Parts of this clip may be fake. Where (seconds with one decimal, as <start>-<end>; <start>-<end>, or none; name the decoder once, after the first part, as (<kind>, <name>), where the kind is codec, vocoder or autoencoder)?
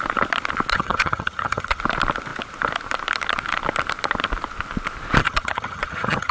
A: 0.7-1.8 (vocoder, HiFi-GAN); 5.2-6.3